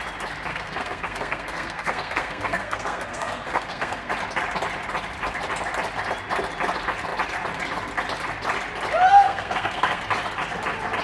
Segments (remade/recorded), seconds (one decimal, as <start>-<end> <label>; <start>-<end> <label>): 0.0-0.5 recorded; 0.5-4.1 remade; 4.1-9.1 recorded; 9.1-10.0 remade; 10.0-11.0 recorded